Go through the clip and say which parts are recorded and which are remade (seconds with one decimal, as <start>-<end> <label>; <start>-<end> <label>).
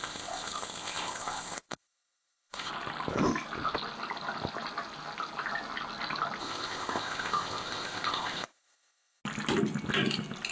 0.0-2.7 remade; 2.7-6.4 recorded; 6.4-9.2 remade; 9.2-10.5 recorded